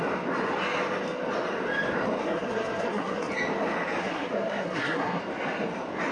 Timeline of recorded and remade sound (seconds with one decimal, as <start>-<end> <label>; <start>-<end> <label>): 0.0-2.2 recorded; 2.2-3.3 remade; 3.3-4.0 recorded; 4.0-5.2 remade; 5.2-6.1 recorded